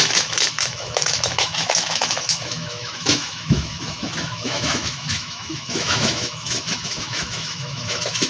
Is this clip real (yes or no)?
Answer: no